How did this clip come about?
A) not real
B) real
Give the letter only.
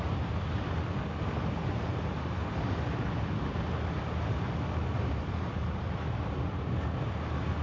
B